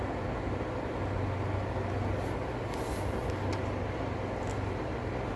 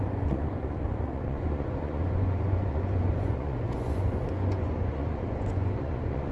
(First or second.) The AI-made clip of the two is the second